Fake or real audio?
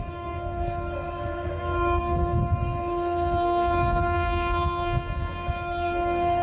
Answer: fake